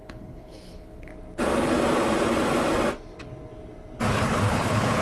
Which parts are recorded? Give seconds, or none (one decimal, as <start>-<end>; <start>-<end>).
1.1-4.1